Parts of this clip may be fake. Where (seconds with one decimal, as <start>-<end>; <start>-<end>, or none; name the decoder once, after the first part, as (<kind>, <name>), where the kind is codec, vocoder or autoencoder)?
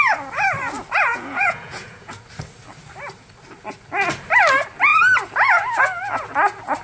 1.1-2.1 (vocoder, Vocos)